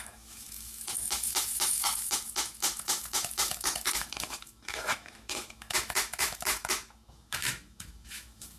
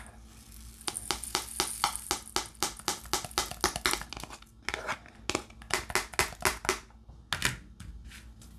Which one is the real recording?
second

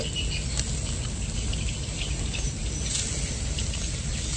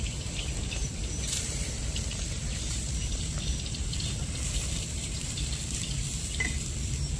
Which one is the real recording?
first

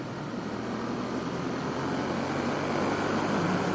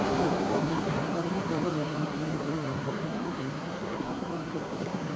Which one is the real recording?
first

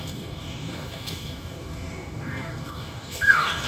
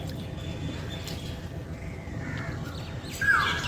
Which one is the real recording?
second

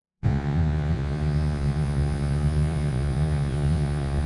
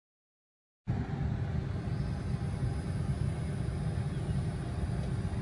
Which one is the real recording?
second